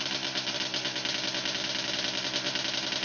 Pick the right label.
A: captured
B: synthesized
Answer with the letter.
A